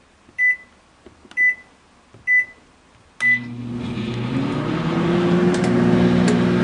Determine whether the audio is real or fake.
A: real